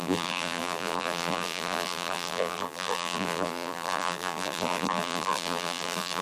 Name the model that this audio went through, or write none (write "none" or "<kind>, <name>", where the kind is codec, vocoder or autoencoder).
vocoder, BigVGAN v2